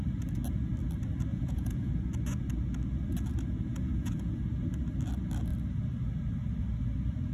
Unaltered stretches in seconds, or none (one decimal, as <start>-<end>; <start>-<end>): 0.0-1.3; 1.9-3.7; 4.4-7.3

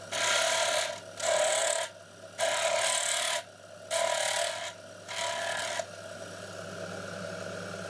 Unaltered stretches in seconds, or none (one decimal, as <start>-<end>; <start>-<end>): 0.0-7.9

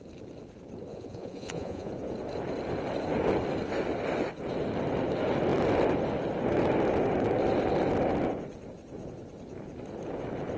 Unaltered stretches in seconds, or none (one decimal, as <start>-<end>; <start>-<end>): 0.0-0.9; 1.9-10.6